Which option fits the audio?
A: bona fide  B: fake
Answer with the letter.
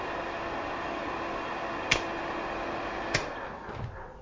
A